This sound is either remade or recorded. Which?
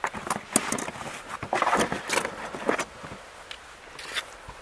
recorded